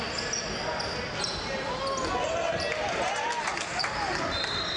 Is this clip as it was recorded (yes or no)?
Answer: yes